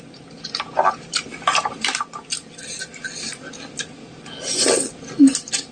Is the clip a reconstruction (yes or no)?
no